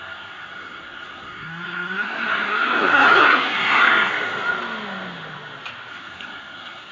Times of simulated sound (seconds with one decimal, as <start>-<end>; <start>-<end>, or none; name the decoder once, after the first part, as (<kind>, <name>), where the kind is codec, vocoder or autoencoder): 0.0-4.1 (codec, SNAC); 5.9-6.9